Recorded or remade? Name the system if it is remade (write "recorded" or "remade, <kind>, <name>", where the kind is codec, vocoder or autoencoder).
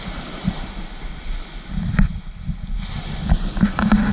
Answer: recorded